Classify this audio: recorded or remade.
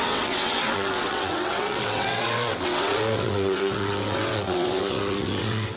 remade